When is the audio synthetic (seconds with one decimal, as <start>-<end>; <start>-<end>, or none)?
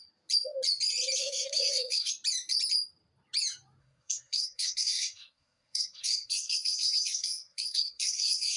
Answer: 1.2-2.1; 3.8-8.6